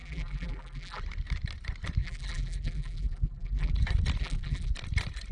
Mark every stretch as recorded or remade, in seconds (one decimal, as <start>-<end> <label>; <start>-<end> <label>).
0.0-1.0 remade; 1.0-2.0 recorded; 2.0-3.7 remade; 3.7-4.2 recorded; 4.2-4.7 remade; 4.7-5.3 recorded